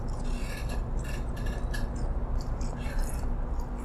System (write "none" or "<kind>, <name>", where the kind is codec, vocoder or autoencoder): none